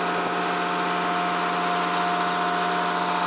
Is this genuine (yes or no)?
yes